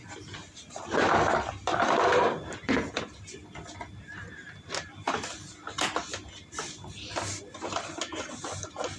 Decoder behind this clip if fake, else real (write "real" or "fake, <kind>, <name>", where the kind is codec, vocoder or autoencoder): real